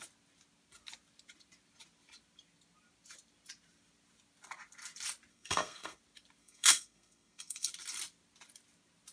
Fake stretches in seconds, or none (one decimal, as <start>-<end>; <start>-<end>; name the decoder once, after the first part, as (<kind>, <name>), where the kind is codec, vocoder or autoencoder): 5.3-6.0 (codec, SNAC); 6.4-7.7